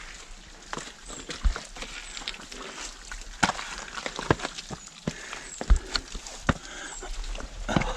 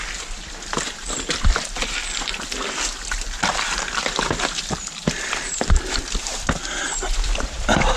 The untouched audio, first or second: first